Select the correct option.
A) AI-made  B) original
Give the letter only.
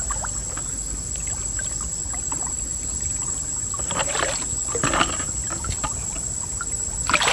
B